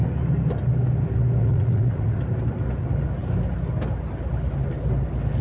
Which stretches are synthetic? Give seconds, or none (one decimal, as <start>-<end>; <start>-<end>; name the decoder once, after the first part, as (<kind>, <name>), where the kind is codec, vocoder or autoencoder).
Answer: 1.4-2.2 (vocoder, Vocos)